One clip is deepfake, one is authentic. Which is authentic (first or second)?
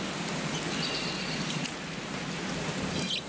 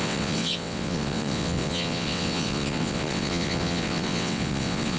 first